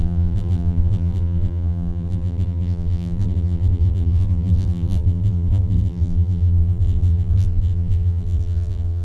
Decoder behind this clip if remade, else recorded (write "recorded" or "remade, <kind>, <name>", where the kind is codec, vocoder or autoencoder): remade, vocoder, BigVGAN v2